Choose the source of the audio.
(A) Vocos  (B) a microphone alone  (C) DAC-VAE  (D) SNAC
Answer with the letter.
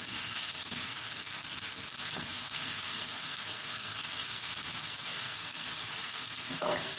D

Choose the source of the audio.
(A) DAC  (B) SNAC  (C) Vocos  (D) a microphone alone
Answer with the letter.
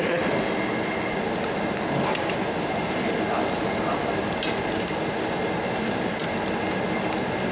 D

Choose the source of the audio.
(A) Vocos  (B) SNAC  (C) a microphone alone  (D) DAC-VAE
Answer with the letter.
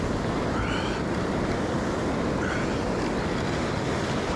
C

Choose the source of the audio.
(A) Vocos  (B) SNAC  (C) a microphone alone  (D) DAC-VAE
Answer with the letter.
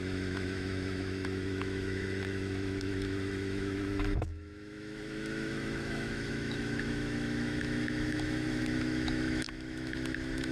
D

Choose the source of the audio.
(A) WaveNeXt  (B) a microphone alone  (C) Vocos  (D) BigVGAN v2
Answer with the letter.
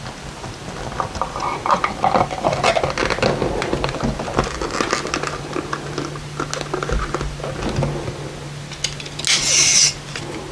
B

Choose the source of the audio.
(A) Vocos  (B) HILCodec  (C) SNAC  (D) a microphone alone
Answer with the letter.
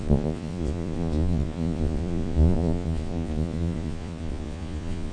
A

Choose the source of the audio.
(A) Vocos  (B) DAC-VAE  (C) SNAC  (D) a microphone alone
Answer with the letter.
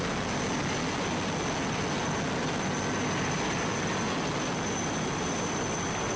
D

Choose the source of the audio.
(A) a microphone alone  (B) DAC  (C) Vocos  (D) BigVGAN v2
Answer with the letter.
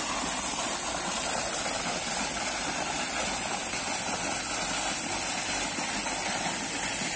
A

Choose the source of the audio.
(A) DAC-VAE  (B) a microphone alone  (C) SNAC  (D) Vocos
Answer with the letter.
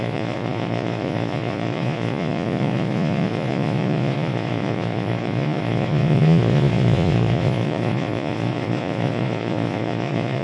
D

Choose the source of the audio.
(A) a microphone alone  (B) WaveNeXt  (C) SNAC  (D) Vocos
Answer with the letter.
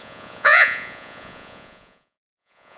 D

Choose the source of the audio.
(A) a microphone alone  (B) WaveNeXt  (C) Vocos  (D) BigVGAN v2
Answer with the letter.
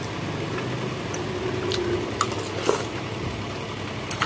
A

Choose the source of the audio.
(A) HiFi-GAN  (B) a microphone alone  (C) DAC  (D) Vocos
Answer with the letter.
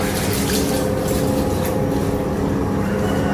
B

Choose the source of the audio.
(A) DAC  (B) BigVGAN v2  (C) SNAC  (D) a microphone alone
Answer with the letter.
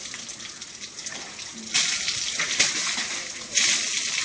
D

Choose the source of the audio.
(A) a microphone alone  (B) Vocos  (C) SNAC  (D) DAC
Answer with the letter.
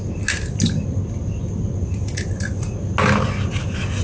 A